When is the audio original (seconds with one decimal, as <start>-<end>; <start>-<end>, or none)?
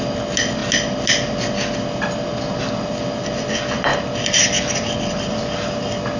0.0-6.2